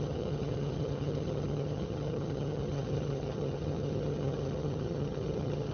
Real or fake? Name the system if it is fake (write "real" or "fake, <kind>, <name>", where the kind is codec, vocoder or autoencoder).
fake, vocoder, HiFi-GAN